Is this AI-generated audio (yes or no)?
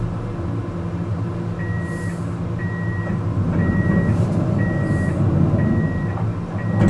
no